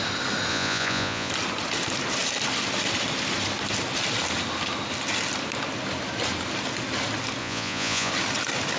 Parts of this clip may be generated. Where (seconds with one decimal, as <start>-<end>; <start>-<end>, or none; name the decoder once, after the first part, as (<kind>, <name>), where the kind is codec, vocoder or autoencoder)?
0.5-1.3 (vocoder, Vocos); 7.4-8.1